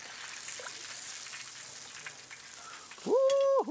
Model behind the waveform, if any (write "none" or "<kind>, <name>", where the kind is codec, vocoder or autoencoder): none